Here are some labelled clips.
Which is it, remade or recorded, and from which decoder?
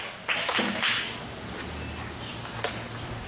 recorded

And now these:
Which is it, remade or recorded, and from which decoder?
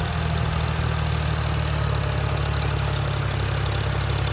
recorded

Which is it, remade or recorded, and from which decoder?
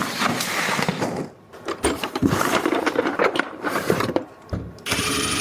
remade, vocoder, BigVGAN v2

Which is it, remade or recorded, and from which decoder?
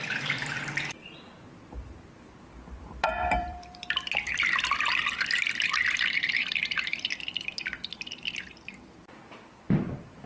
remade, vocoder, BigVGAN v2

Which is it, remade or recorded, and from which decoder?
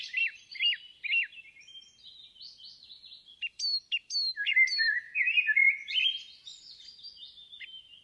recorded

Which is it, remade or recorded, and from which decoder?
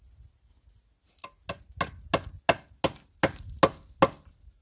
recorded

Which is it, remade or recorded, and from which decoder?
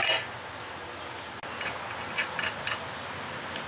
recorded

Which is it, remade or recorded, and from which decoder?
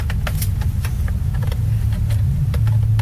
recorded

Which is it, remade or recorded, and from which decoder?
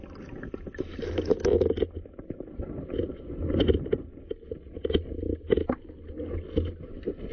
recorded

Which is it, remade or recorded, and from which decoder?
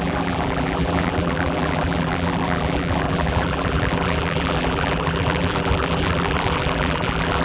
remade, vocoder, BigVGAN v2